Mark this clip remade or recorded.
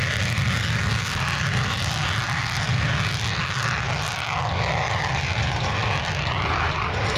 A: recorded